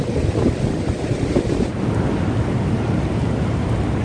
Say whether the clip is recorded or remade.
recorded